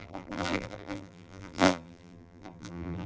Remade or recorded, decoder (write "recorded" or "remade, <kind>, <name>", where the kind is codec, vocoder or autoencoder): remade, vocoder, BigVGAN v2